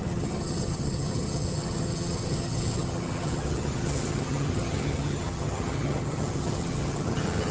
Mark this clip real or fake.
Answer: fake